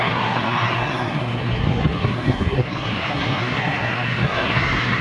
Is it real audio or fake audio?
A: fake